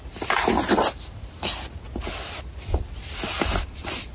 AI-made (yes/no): no